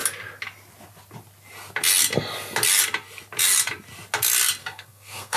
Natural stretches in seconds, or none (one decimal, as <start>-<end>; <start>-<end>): 0.0-4.6

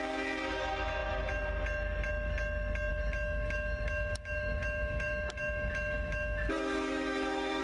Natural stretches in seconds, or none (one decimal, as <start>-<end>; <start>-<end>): 0.0-2.9

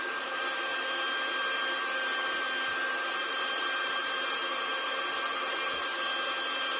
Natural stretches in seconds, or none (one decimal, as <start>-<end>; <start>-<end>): 0.7-3.2; 5.9-6.8

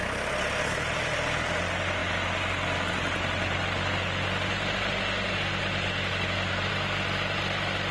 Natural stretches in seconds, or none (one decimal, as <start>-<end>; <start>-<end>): 0.0-7.9

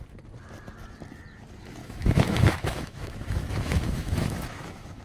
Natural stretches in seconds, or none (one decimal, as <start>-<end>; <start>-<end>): 0.0-1.8

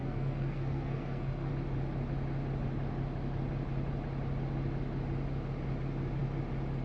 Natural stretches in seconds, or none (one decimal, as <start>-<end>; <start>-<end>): 1.5-6.8

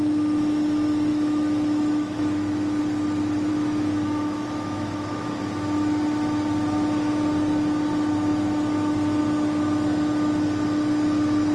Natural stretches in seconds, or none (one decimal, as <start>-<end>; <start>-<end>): 0.0-1.1; 2.8-3.5; 5.4-11.5

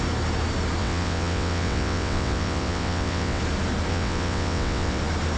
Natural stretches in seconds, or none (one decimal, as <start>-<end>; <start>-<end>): 0.0-0.8; 3.4-3.9; 5.0-5.4